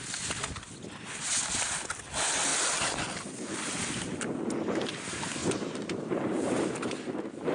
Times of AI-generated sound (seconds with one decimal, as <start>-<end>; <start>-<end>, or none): 5.4-6.7

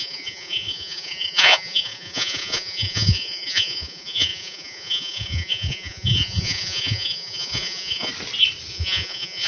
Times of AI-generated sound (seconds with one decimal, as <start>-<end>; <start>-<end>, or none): 0.0-8.1; 8.7-9.5

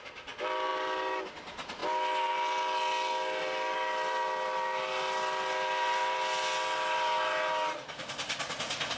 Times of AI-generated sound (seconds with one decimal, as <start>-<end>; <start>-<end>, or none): none

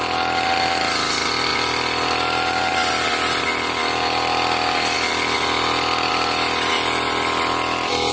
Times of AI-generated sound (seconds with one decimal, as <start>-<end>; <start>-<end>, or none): none

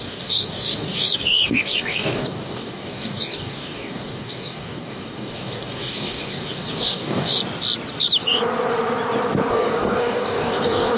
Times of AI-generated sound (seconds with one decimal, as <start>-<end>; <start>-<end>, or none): 0.0-7.4; 9.5-11.0

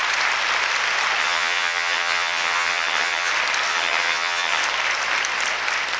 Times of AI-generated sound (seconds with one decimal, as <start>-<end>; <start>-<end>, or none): 1.2-3.3; 3.7-4.6

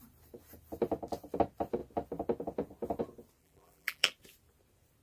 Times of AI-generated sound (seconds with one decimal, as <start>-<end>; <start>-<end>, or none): 3.4-4.1

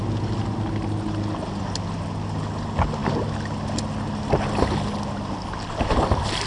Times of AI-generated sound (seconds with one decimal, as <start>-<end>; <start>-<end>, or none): none